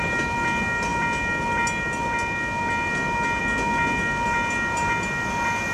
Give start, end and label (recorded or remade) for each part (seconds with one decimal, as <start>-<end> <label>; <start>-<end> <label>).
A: 0.0-5.7 recorded